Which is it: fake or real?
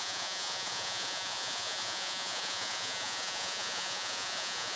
fake